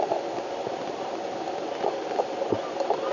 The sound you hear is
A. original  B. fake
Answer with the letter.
A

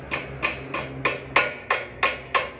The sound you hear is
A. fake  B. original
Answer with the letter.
B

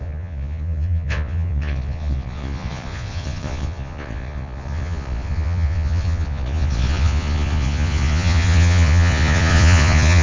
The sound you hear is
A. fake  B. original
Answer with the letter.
A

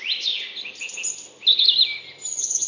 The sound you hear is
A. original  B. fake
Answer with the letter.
A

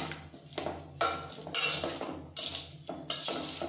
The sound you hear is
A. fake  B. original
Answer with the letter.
B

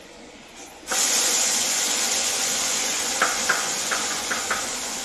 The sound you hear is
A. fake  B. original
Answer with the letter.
A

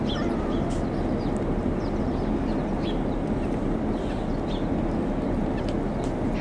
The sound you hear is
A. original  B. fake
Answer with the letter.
A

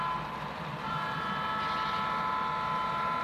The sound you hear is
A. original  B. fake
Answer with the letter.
A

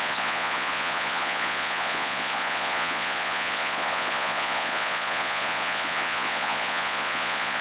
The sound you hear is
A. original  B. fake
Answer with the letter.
B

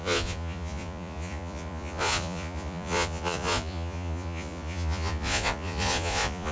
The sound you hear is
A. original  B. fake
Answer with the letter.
B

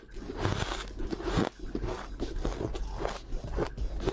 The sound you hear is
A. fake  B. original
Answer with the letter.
B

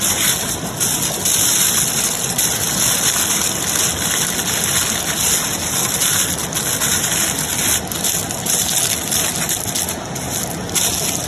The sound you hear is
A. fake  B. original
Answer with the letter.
B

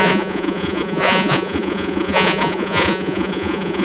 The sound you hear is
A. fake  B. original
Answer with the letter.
A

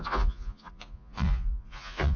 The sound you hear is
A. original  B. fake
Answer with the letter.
B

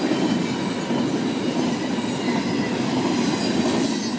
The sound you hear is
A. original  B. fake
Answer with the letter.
A